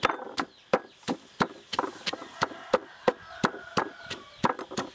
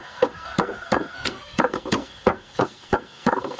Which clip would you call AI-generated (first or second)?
second